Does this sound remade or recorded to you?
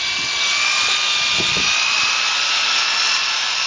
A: recorded